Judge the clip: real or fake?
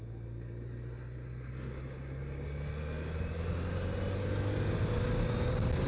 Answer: real